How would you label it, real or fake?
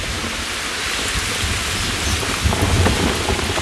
real